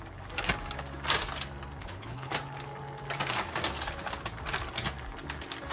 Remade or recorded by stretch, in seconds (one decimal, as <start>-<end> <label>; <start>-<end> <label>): 0.0-1.8 recorded; 1.8-2.3 remade; 2.3-5.7 recorded

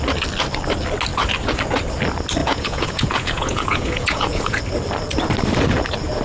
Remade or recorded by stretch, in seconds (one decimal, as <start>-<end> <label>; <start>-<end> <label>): 0.0-2.4 recorded; 2.4-4.6 remade; 4.6-6.2 recorded

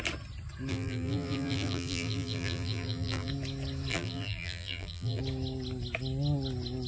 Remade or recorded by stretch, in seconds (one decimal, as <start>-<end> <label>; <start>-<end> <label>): 0.0-0.7 recorded; 0.7-3.3 remade; 3.3-3.9 recorded; 3.9-5.2 remade; 5.2-6.9 recorded